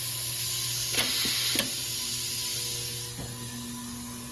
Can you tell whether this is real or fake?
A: real